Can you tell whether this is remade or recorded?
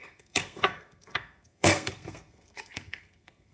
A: remade